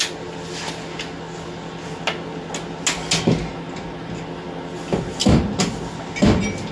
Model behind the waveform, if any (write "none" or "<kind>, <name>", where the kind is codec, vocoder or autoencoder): none